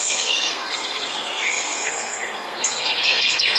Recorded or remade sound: remade